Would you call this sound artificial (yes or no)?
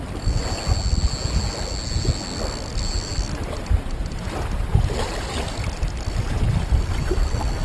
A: no